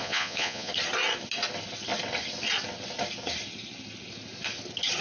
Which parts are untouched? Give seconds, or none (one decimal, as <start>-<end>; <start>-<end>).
0.7-5.0